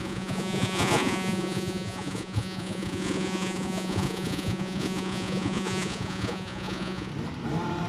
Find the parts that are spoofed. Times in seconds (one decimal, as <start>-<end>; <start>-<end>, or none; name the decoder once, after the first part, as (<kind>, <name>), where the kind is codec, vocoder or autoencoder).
0.0-7.1 (vocoder, Vocos)

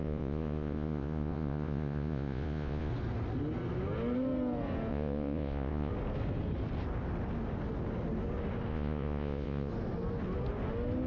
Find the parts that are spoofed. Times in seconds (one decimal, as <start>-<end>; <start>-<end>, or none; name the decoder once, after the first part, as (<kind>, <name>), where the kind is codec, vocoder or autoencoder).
0.0-2.9 (vocoder, Vocos); 4.9-5.9; 8.7-9.7

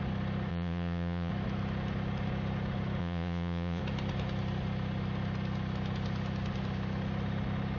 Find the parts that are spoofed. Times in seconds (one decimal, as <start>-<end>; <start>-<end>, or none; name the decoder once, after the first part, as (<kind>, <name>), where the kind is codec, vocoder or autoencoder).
0.5-1.3 (vocoder, Vocos); 3.0-3.8

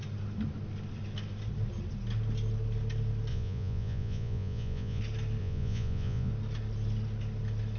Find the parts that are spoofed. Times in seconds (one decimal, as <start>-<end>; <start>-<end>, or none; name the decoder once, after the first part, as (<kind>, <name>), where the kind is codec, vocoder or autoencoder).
3.3-5.0 (vocoder, Vocos); 5.4-6.3

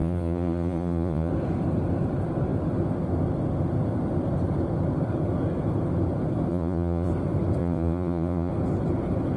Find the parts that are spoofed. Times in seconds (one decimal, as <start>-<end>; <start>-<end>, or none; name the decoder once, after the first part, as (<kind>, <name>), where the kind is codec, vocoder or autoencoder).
0.0-1.3 (vocoder, Vocos); 6.5-7.1; 7.6-8.5

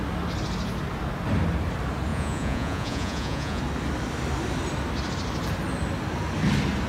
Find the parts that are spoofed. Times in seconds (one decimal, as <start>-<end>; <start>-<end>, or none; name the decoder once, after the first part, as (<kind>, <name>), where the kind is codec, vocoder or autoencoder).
2.1-3.6 (vocoder, Vocos)

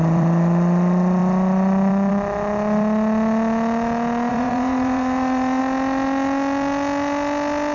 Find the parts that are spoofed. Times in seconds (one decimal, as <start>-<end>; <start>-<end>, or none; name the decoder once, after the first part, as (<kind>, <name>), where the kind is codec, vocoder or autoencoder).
4.3-5.6 (vocoder, Vocos)

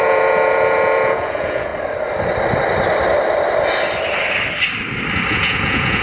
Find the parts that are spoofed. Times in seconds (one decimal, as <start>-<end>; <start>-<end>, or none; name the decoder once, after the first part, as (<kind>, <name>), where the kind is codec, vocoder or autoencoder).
0.0-1.7 (vocoder, Vocos); 5.3-6.0